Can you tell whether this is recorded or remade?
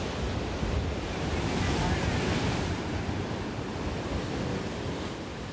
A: recorded